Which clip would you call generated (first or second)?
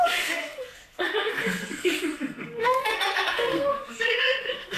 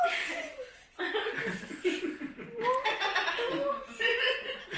first